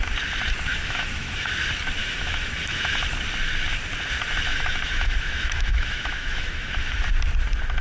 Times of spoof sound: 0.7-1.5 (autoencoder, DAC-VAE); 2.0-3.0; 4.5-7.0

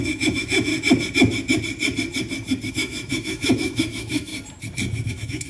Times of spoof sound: 0.0-0.7 (autoencoder, DAC-VAE); 2.7-4.3; 5.1-5.5

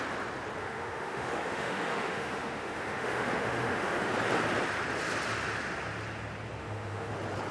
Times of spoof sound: 0.6-4.1 (autoencoder, DAC-VAE); 6.6-7.1

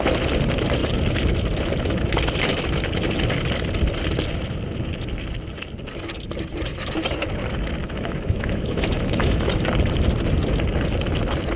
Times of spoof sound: 7.8-9.5 (autoencoder, DAC-VAE)

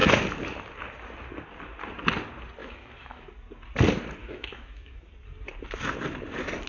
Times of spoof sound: 2.6-3.3 (autoencoder, DAC-VAE); 4.2-5.1

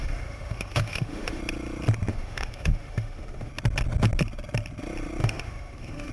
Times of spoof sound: 0.0-1.4 (autoencoder, DAC-VAE); 2.1-3.5; 5.2-6.1

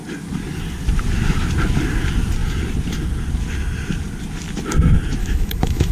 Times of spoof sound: 5.2-5.9 (autoencoder, DAC-VAE)